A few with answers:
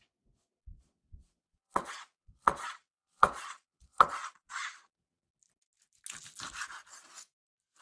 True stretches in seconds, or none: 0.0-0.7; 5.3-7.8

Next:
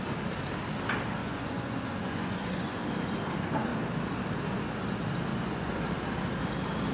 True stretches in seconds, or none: 0.0-1.2; 2.8-5.3; 5.8-6.9

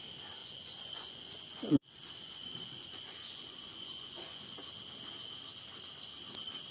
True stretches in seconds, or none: 0.0-0.4; 4.4-6.7

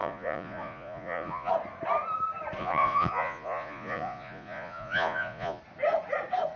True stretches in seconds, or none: 1.5-2.6; 5.6-6.6

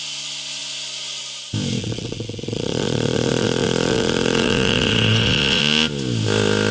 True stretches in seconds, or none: 0.0-1.8; 5.6-6.7

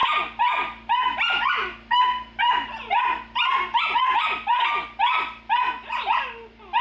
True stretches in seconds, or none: 0.0-6.8

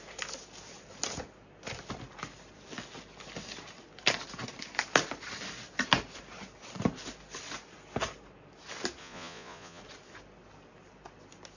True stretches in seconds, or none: 0.0-9.0; 9.8-11.6

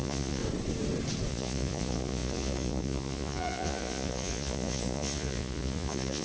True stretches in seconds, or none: 0.4-1.3